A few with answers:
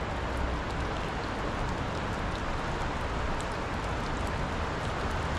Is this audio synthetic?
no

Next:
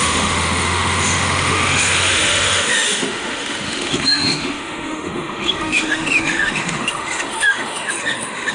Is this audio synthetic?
yes